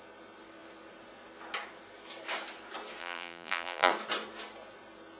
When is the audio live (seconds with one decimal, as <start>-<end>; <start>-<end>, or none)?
0.0-3.0; 3.9-5.2